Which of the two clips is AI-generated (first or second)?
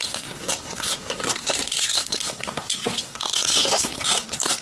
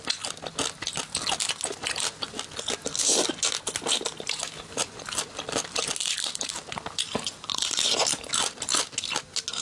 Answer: first